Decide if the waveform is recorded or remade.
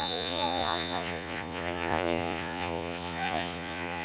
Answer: remade